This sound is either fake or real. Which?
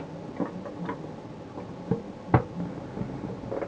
real